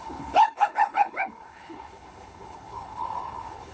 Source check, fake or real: fake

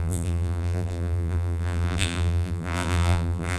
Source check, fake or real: fake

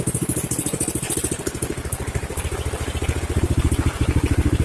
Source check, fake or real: real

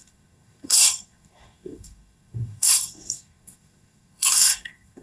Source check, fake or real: fake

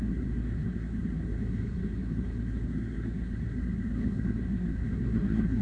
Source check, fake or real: fake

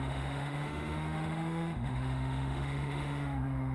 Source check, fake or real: fake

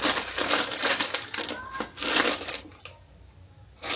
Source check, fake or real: real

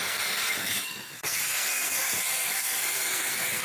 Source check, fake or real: fake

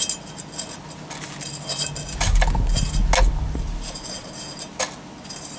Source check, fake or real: real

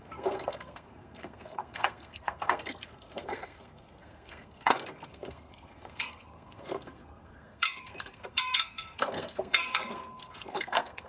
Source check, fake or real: fake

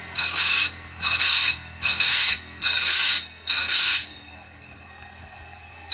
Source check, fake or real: fake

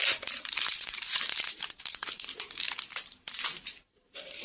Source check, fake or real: fake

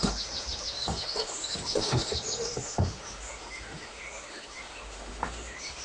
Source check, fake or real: fake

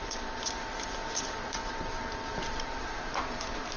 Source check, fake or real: fake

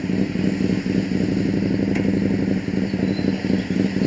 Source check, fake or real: real